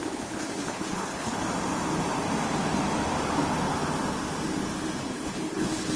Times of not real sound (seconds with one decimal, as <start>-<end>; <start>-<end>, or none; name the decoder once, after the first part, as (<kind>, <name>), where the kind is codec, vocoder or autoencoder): 0.0-1.4 (codec, HILCodec); 5.0-6.0